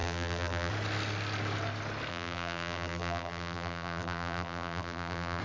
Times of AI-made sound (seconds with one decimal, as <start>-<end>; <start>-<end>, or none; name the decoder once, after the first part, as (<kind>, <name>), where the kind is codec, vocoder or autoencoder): 0.0-0.7 (vocoder, BigVGAN v2); 2.1-5.4